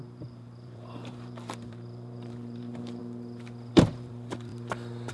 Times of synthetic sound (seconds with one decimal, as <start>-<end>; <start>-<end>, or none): 0.0-3.0; 3.7-4.5